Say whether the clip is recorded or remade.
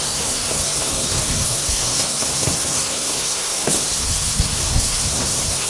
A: remade